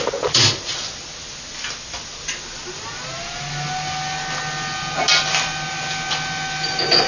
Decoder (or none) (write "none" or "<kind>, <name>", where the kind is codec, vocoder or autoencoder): none